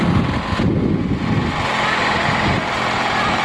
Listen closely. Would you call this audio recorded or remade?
recorded